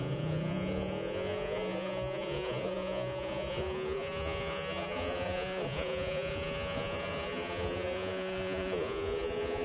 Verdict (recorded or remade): remade